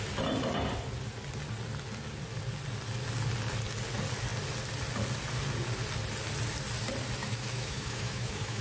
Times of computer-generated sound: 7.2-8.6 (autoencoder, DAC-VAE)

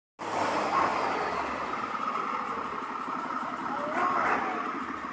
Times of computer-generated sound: none

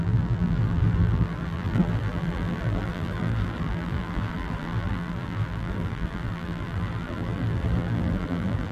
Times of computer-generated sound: 0.0-8.7 (vocoder, BigVGAN v2)

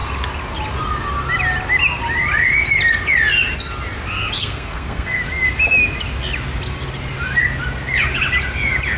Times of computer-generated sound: 4.4-5.2 (codec, SNAC)

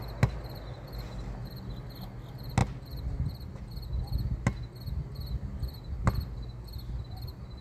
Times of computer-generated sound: none

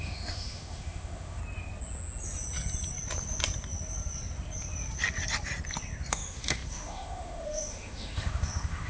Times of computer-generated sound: 0.0-1.4 (autoencoder, DAC-VAE); 6.1-8.9

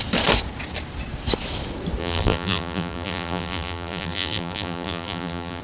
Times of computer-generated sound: 2.0-5.6 (vocoder, BigVGAN v2)